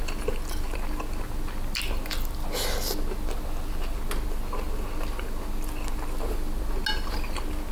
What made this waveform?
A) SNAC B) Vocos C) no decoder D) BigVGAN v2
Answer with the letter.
C